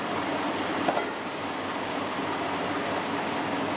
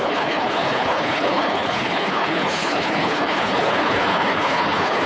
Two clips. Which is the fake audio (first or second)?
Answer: second